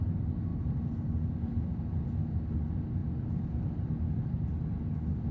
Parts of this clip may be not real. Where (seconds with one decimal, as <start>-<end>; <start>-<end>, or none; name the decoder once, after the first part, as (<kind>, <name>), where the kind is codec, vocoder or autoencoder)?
0.5-1.5 (vocoder, BigVGAN v2)